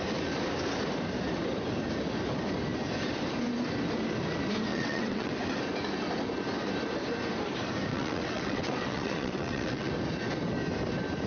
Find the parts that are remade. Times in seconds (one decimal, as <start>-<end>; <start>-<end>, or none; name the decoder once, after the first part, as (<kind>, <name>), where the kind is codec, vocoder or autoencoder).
4.7-5.3 (vocoder, WaveNeXt); 7.9-9.9